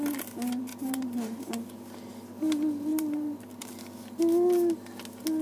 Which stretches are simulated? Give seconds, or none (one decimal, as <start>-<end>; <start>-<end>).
0.7-1.5; 2.9-3.8